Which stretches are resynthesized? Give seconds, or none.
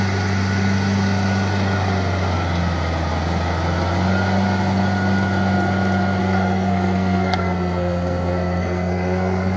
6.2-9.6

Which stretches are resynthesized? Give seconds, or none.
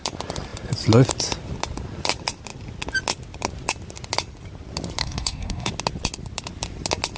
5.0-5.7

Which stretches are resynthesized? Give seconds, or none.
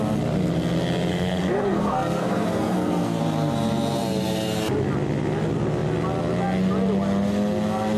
1.1-3.2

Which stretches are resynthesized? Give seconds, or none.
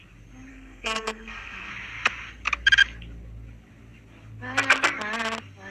0.5-1.7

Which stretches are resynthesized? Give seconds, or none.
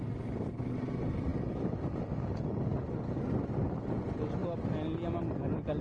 none